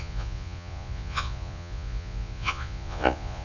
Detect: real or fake fake